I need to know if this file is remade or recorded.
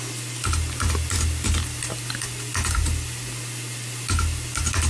recorded